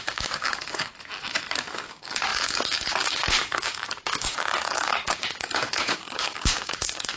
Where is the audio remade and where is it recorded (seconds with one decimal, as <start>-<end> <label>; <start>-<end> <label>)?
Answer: 0.0-0.9 remade; 0.9-1.9 recorded; 1.9-7.2 remade